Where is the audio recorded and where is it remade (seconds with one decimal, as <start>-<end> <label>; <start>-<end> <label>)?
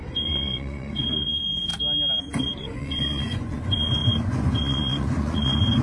0.0-1.7 remade; 1.7-2.2 recorded; 2.2-5.8 remade